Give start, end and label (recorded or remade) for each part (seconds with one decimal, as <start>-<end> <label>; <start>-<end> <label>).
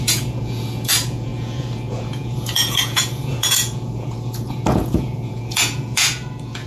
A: 0.0-6.7 remade